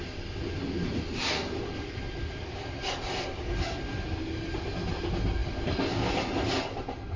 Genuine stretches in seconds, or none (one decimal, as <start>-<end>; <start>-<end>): 0.0-7.2